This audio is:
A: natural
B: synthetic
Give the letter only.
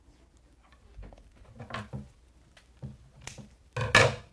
A